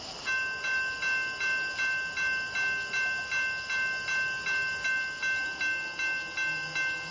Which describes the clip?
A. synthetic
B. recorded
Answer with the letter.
B